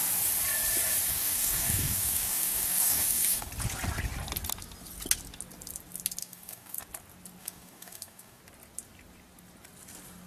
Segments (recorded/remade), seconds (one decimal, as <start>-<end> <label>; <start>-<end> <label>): 0.0-1.1 recorded; 1.1-3.5 remade; 3.5-6.2 recorded; 6.2-6.8 remade; 6.8-7.4 recorded; 7.4-8.4 remade; 8.4-10.3 recorded